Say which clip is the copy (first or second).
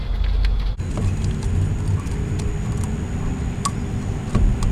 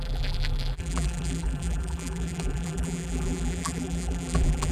second